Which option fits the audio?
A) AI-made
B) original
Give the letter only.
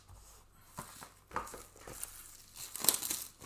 B